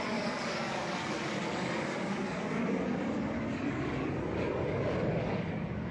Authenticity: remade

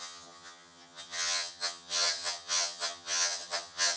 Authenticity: remade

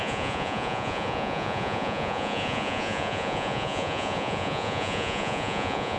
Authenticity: remade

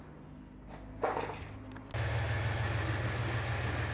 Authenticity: recorded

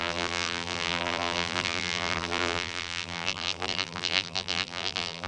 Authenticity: remade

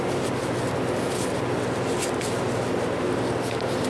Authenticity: recorded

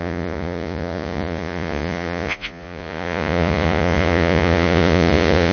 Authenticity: remade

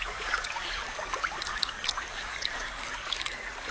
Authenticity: remade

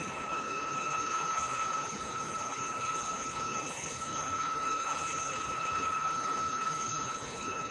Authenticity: remade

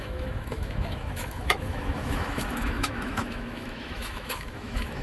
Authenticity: remade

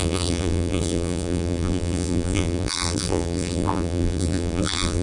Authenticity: remade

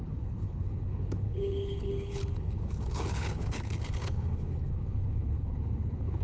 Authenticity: remade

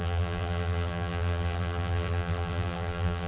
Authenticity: remade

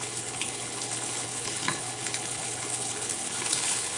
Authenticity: remade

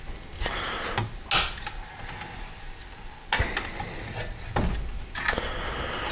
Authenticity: recorded